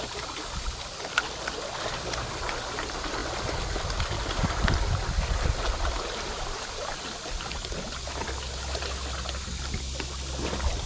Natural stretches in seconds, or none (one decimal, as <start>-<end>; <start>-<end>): 0.0-10.9